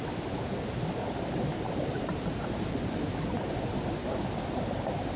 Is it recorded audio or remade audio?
recorded